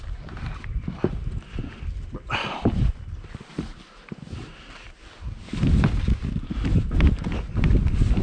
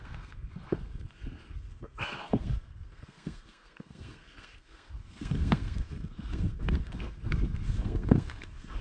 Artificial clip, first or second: second